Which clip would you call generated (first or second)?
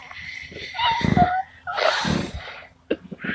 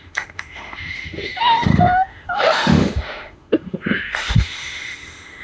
second